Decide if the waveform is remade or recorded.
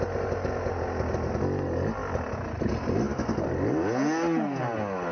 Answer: recorded